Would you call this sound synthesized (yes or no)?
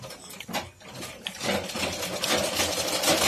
no